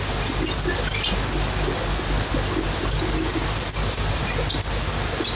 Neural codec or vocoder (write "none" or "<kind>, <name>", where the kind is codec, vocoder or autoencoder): none